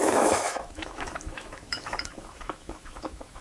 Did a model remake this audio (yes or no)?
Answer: yes